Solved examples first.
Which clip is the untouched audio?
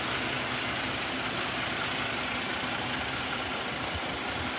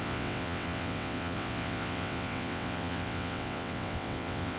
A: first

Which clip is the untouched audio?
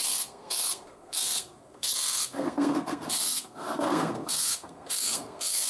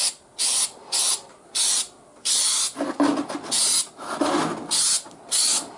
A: second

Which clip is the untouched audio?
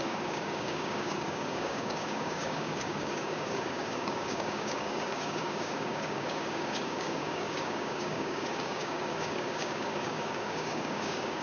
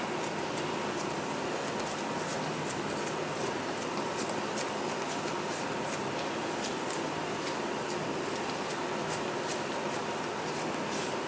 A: second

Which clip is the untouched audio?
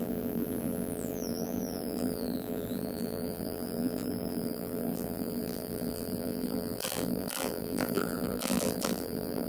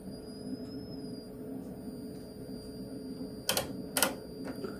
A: second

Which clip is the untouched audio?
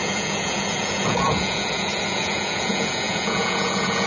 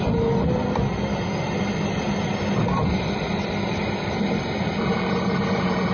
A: second